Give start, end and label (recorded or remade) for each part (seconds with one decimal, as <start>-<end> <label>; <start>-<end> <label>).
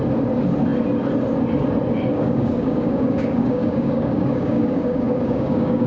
0.0-2.1 recorded; 2.1-5.9 remade